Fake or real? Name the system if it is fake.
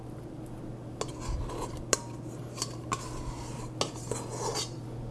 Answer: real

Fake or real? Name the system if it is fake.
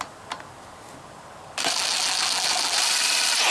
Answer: real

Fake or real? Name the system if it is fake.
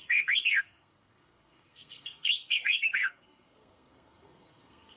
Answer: fake, codec, SNAC